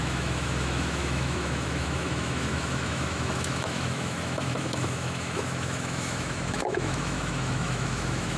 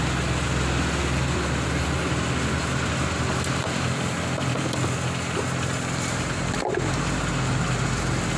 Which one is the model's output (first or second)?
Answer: first